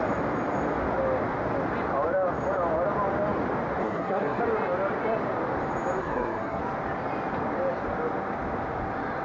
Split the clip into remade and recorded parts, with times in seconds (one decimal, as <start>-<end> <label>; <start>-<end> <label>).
0.0-3.8 recorded; 3.8-4.4 remade; 4.4-6.0 recorded; 6.0-6.6 remade; 6.6-9.2 recorded